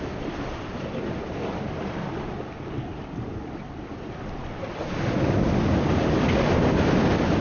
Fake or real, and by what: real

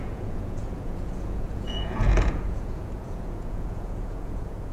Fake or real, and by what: fake, vocoder, Vocos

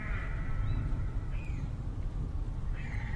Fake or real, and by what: real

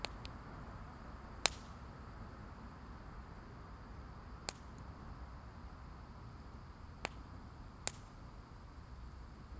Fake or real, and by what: real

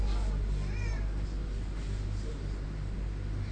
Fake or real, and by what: real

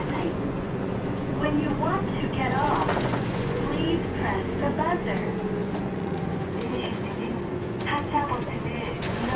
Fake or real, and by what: fake, vocoder, Vocos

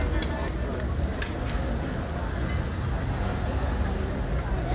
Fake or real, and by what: real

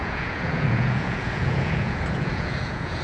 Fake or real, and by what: fake, vocoder, Vocos